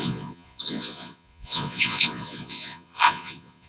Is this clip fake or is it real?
fake